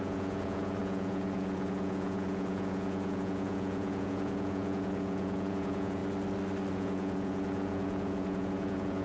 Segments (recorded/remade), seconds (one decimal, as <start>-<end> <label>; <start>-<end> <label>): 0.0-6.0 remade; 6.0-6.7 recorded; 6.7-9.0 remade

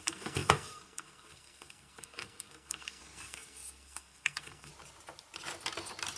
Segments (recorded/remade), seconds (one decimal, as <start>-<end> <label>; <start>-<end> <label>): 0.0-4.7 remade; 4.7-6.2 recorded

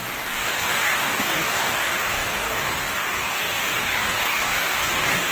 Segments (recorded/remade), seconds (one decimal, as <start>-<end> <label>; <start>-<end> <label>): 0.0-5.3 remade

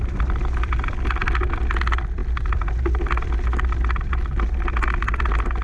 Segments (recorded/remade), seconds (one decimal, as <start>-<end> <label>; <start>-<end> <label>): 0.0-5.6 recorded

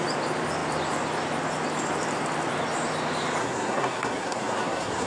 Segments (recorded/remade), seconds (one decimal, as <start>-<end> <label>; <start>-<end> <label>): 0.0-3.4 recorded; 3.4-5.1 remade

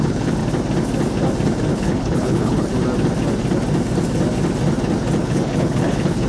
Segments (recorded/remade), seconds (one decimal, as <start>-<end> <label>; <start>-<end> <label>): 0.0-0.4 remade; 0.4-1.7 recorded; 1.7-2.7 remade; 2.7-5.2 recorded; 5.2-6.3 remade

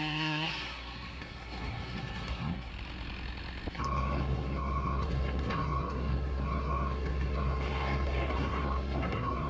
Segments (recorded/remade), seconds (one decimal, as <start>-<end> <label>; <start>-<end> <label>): 0.0-2.7 remade; 2.7-3.7 recorded; 3.7-9.5 remade

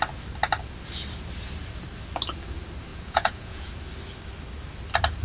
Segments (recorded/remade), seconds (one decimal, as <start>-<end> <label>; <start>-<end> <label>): 0.0-2.9 recorded; 2.9-3.7 remade; 3.7-5.2 recorded